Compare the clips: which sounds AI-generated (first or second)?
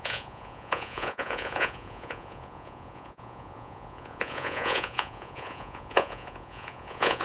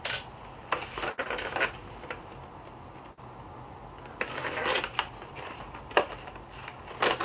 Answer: first